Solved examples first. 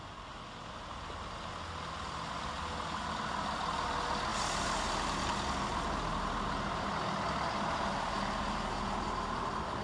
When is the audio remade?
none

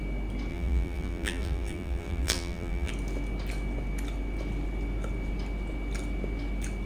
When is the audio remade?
0.5-2.9